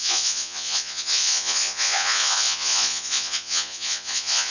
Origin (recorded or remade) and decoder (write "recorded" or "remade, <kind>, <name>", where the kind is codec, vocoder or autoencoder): remade, vocoder, Vocos